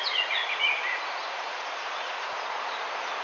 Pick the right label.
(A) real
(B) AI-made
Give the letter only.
B